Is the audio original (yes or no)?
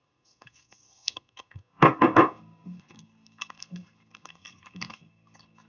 no